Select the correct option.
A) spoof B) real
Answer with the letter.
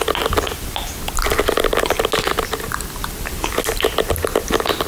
B